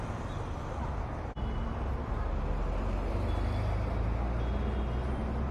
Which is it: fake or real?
real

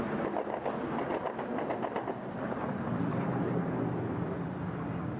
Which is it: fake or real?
real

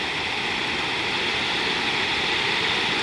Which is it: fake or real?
real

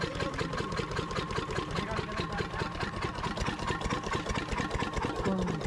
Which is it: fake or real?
real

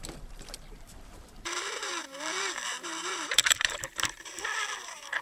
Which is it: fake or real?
fake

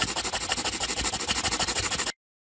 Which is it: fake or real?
real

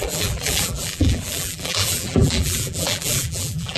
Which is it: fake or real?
fake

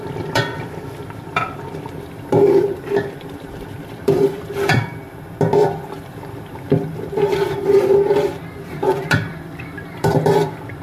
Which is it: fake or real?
fake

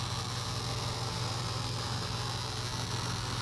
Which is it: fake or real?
real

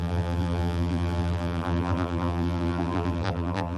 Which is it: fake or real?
fake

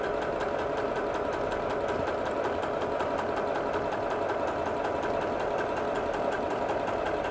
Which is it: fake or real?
real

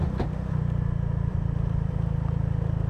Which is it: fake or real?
fake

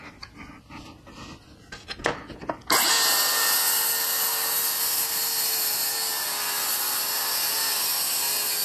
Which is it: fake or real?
real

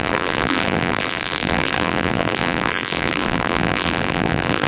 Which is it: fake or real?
fake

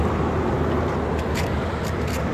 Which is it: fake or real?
fake